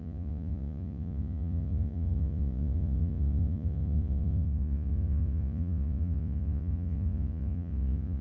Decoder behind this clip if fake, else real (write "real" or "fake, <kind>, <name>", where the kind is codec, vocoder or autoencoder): fake, vocoder, Vocos